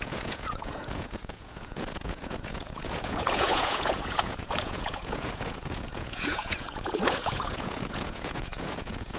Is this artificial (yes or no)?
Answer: yes